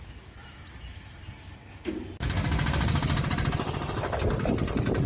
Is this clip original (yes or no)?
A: yes